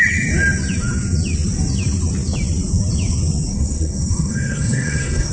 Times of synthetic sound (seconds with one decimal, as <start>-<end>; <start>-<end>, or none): 3.5-5.3